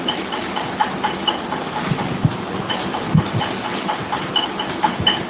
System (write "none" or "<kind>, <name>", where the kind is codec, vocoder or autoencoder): none